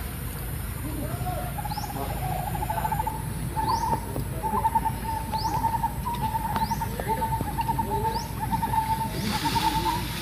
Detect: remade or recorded recorded